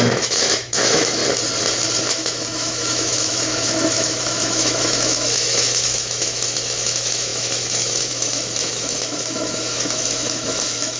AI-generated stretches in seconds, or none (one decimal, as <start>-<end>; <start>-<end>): 0.0-1.2; 2.1-11.0